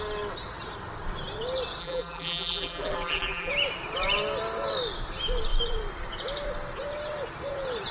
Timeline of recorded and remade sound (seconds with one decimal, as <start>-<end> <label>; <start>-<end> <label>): 0.0-1.8 recorded; 1.8-3.5 remade; 3.5-7.9 recorded